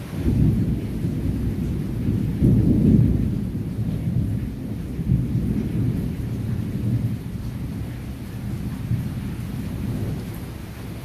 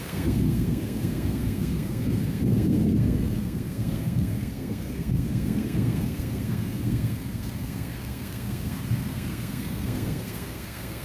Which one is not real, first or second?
second